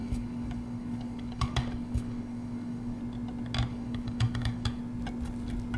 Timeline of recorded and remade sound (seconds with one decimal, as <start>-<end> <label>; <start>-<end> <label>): 0.0-3.0 remade; 3.0-3.7 recorded; 3.7-4.8 remade; 4.8-5.8 recorded